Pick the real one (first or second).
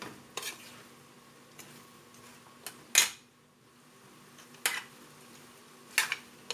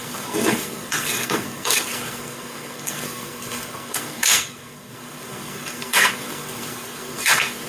first